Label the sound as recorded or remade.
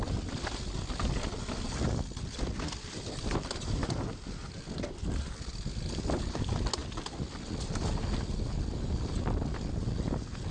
recorded